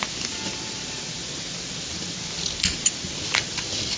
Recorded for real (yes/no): yes